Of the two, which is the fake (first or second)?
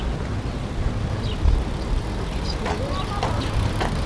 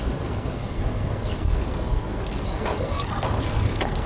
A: second